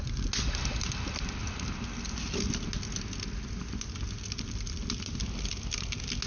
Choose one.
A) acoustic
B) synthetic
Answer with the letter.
A